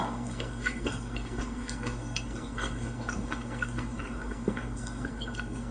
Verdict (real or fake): fake